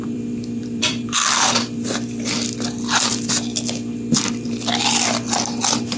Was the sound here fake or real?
fake